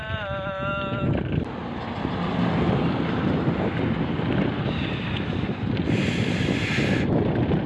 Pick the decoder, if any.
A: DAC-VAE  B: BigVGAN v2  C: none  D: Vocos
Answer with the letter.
C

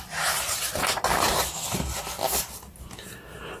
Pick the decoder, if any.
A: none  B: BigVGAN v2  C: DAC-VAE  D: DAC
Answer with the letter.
A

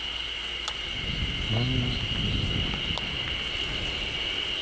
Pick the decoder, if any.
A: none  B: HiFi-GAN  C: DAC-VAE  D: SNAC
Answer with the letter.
A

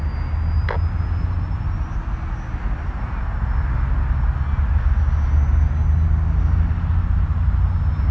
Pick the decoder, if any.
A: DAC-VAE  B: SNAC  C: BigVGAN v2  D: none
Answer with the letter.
D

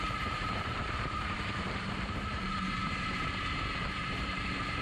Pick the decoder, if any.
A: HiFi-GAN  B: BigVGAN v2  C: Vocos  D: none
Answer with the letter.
B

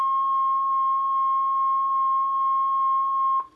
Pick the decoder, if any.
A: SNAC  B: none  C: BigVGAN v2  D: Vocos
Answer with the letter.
B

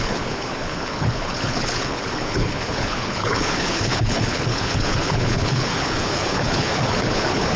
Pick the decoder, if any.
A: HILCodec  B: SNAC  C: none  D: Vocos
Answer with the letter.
A